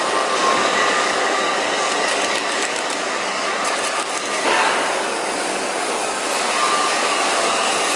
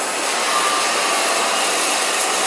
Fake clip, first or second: first